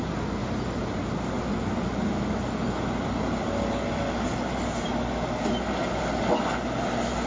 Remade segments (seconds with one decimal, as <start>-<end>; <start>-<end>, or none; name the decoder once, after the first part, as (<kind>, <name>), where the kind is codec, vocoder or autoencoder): none